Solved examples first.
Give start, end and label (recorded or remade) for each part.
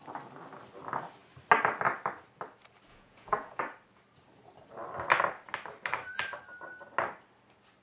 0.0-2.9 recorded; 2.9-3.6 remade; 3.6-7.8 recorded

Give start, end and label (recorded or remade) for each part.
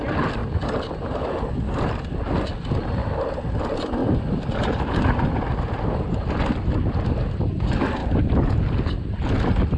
0.0-0.4 recorded; 0.4-1.9 remade; 1.9-4.0 recorded; 4.0-6.5 remade; 6.5-9.8 recorded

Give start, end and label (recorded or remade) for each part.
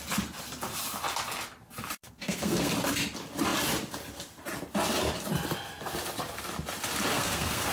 0.0-2.0 recorded; 2.0-2.7 remade; 2.7-7.1 recorded; 7.1-7.7 remade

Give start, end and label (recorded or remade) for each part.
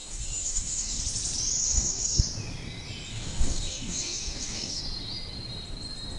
0.0-1.0 remade; 1.0-1.6 recorded; 1.6-2.2 remade; 2.2-3.1 recorded; 3.1-4.8 remade; 4.8-6.2 recorded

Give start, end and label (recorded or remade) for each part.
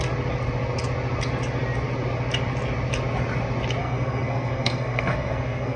0.0-3.8 recorded; 3.8-5.8 remade